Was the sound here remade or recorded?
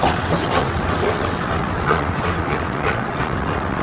remade